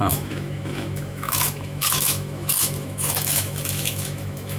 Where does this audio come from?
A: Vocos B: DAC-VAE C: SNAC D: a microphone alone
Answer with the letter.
B